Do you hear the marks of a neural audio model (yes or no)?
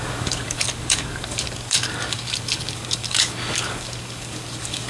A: yes